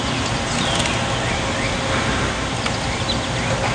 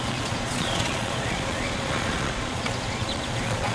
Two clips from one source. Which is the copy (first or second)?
second